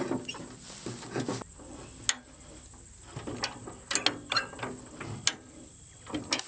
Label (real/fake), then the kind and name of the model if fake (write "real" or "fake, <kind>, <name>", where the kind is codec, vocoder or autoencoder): real